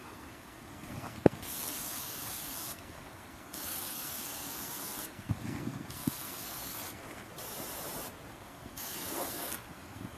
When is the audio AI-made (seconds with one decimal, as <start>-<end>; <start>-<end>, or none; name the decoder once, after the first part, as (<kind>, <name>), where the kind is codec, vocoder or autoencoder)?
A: 0.0-7.3 (codec, SNAC); 8.3-10.2